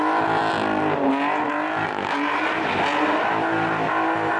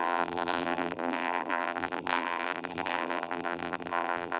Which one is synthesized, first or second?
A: second